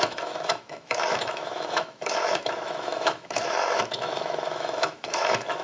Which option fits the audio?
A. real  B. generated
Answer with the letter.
B